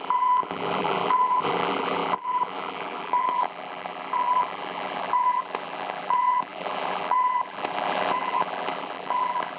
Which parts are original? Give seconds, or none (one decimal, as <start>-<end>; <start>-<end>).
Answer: none